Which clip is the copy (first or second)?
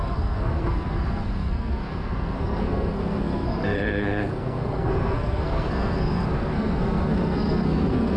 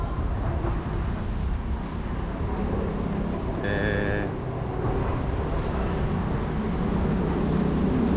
first